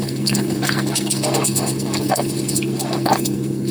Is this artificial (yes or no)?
yes